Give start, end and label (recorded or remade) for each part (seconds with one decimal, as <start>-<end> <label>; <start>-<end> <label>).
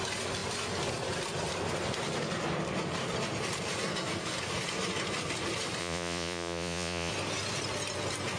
0.0-5.8 recorded; 5.8-7.1 remade; 7.1-8.4 recorded